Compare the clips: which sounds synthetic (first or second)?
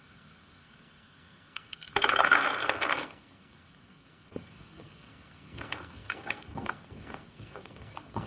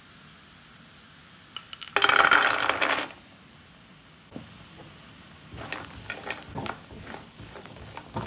first